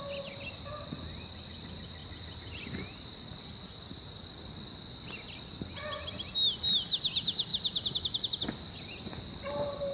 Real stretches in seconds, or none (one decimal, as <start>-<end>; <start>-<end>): 0.0-9.9